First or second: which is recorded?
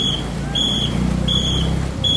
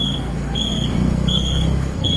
first